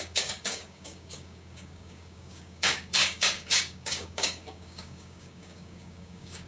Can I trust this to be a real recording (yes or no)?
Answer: no